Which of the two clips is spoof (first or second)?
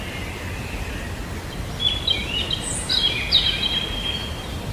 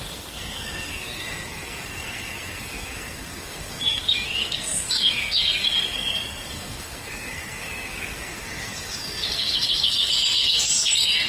second